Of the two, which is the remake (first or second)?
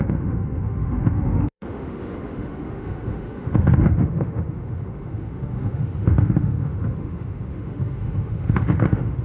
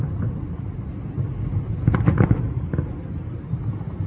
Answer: first